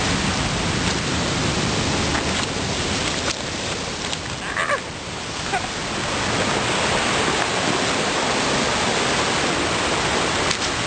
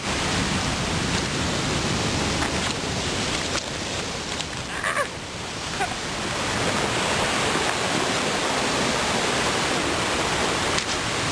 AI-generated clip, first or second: second